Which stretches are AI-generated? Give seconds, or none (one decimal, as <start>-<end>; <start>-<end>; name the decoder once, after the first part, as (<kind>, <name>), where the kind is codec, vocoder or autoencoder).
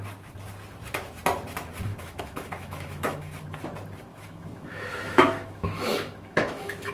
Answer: 1.9-3.3 (autoencoder, DAC-VAE); 4.1-6.9